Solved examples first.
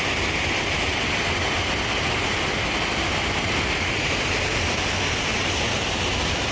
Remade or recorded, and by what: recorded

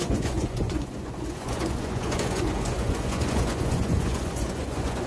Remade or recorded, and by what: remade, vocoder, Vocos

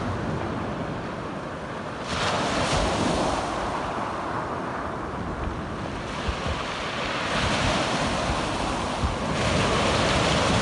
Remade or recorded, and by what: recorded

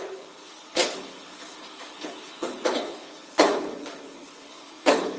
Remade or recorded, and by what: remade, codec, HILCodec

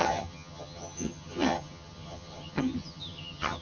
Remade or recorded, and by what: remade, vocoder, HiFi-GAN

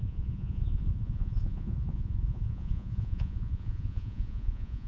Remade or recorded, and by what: remade, vocoder, Vocos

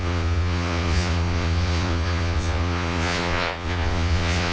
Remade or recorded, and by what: remade, vocoder, Vocos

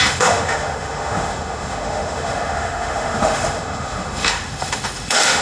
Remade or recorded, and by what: remade, autoencoder, DAC-VAE